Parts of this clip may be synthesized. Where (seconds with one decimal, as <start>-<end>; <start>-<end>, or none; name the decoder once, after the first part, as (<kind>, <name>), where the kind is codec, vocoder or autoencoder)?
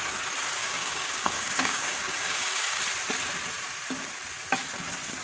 0.6-2.8 (codec, DAC)